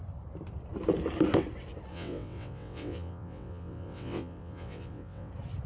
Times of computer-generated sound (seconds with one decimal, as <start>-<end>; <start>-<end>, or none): 1.9-5.3